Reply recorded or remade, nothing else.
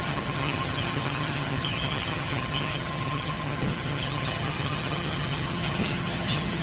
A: remade